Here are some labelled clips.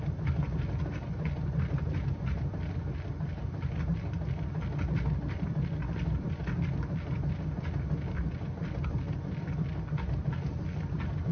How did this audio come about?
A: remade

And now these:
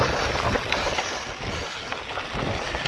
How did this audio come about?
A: recorded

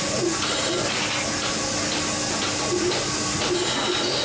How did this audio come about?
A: recorded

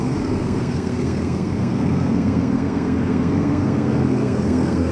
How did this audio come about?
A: remade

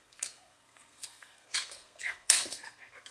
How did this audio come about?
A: remade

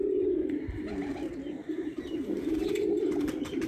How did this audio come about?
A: remade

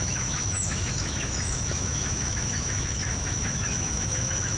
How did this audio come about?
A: remade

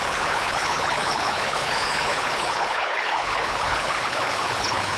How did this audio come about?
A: remade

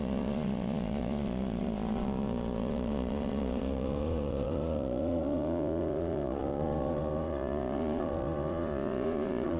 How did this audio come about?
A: remade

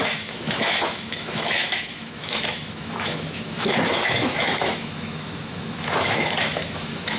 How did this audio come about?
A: remade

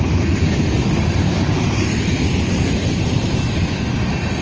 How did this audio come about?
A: remade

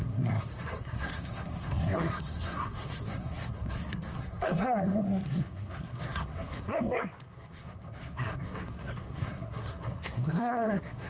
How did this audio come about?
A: remade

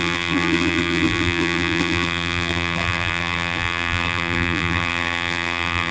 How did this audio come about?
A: remade